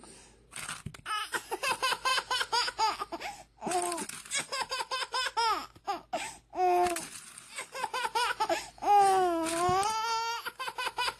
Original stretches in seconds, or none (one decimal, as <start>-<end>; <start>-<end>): 0.0-11.2